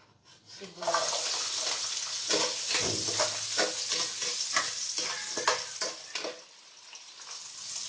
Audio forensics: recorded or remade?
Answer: recorded